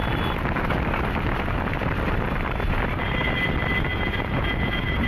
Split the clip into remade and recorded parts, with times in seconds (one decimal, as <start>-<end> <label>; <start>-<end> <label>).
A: 0.0-3.9 recorded; 3.9-5.1 remade